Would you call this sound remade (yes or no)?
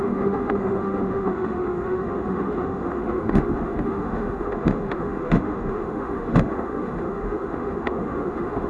yes